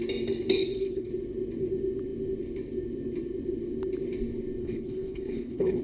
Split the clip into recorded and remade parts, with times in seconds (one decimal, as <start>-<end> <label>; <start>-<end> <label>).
0.0-0.6 recorded; 0.6-1.1 remade; 1.1-4.6 recorded; 4.6-5.8 remade